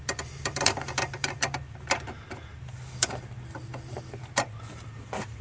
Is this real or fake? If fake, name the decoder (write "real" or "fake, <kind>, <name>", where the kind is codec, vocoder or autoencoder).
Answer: fake, vocoder, BigVGAN v2